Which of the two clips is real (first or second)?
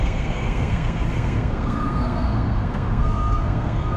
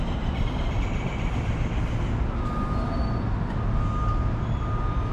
second